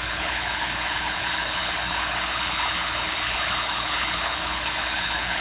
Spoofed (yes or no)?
yes